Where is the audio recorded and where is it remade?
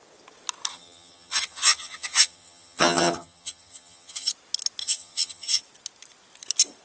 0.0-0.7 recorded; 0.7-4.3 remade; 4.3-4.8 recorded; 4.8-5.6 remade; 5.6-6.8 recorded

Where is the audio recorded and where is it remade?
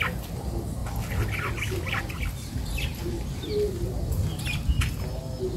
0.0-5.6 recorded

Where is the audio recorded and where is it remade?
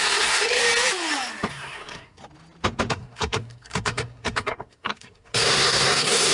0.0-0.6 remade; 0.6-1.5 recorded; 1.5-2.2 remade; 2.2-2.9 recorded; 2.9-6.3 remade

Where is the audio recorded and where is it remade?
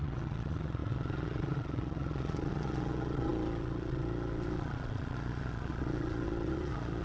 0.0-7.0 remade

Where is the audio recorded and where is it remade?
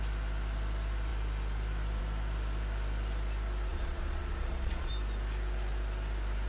0.0-3.7 recorded; 3.7-4.9 remade; 4.9-6.5 recorded